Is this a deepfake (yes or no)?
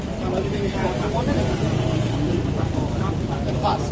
no